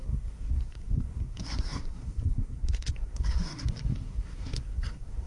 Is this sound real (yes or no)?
no